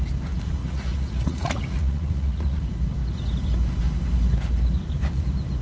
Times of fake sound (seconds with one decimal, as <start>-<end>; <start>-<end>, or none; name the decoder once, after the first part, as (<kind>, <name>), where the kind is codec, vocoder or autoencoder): 0.6-2.6 (vocoder, Vocos)